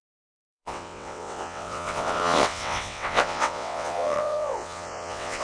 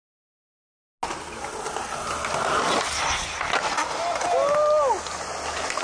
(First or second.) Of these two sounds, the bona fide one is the second